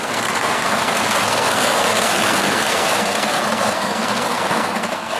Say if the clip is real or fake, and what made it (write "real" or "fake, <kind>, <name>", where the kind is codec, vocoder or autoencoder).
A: fake, codec, SNAC